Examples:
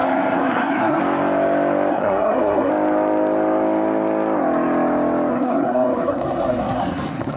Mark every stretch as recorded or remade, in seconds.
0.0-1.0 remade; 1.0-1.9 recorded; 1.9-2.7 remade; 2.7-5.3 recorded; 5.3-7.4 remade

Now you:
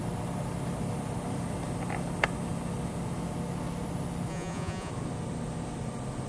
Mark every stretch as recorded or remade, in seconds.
0.0-4.3 recorded; 4.3-4.9 remade; 4.9-6.3 recorded